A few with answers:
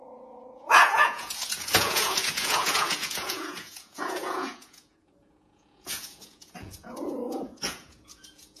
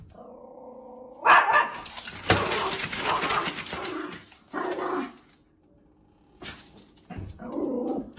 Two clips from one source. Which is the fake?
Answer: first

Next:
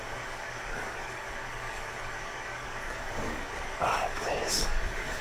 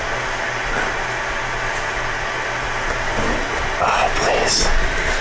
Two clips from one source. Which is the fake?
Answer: first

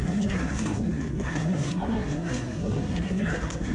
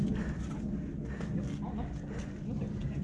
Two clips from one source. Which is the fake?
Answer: first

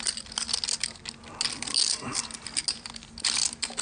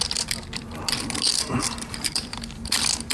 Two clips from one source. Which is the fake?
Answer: second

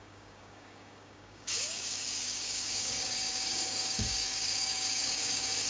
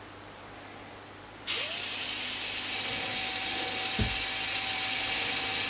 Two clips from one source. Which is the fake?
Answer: first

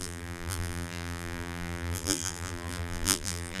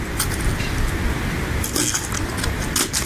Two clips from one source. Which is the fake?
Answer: first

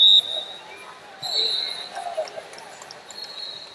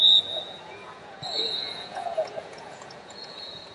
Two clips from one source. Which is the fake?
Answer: second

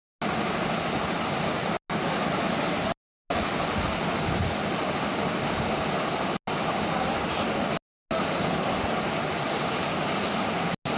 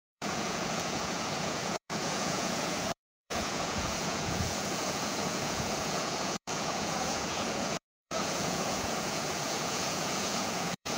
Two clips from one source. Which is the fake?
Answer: second